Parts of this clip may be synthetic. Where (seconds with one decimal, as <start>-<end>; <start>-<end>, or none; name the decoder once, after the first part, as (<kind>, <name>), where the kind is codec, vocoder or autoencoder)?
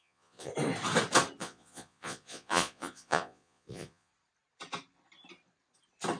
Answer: 0.0-0.5 (vocoder, Vocos); 1.4-4.1